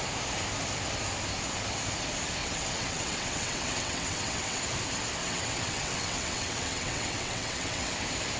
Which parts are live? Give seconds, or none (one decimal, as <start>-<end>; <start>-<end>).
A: 0.0-2.4; 4.6-5.2; 7.9-8.4